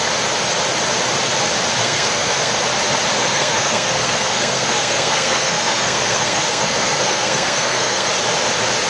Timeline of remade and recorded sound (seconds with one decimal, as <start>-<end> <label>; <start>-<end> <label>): 0.0-1.8 recorded; 1.8-2.5 remade; 2.5-3.2 recorded; 3.2-8.1 remade; 8.1-8.9 recorded